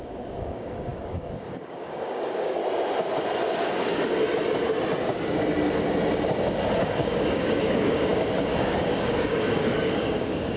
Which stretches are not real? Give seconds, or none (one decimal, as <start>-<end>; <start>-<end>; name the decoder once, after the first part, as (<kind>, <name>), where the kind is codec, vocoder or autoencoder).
0.0-2.6 (codec, DAC); 6.8-10.6